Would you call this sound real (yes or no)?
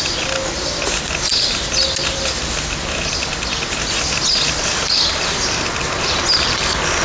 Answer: yes